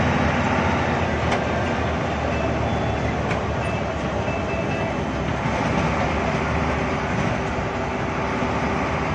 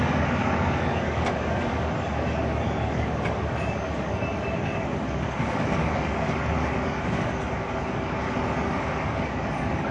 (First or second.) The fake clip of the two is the second